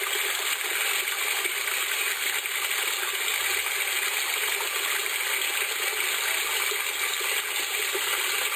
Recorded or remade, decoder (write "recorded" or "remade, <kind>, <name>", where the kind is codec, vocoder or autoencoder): recorded